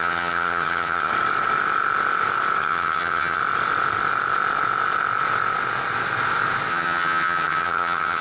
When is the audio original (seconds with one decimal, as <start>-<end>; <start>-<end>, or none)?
1.1-2.6; 3.4-6.7